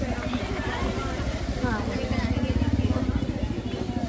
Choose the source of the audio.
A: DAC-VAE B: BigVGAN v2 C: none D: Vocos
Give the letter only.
C